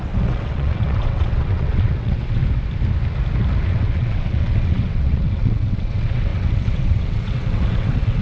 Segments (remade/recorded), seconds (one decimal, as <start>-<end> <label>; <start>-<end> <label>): 0.0-2.4 remade; 2.4-3.7 recorded; 3.7-8.2 remade